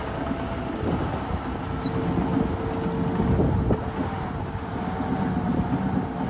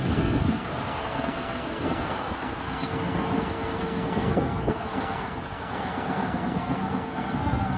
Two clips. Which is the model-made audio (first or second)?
second